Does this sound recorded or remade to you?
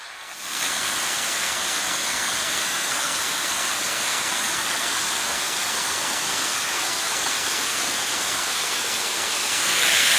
remade